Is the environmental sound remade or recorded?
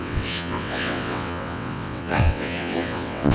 remade